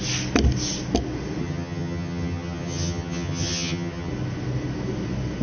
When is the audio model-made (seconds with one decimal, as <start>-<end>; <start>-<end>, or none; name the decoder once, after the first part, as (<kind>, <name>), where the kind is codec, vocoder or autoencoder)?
1.4-4.1 (vocoder, HiFi-GAN)